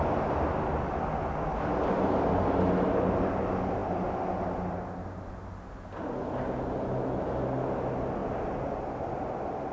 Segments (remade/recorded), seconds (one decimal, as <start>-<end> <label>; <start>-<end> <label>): 0.0-9.7 recorded